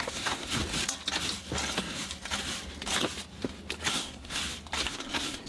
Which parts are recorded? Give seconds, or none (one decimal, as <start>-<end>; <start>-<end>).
0.6-3.9; 4.4-4.9